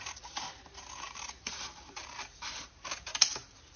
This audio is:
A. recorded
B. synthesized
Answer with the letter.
B